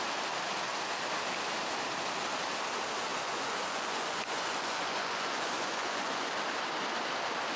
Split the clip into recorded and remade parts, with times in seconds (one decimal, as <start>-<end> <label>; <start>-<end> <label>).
0.0-3.1 recorded; 3.1-6.3 remade; 6.3-7.6 recorded